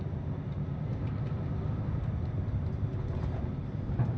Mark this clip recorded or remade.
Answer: remade